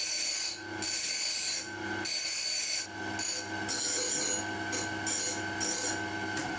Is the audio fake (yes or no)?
no